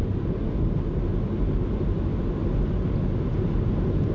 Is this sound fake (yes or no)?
no